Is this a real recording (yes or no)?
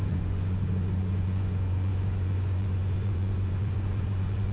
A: no